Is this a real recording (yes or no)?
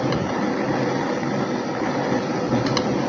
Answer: yes